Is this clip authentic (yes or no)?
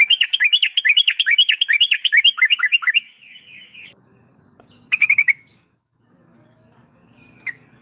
no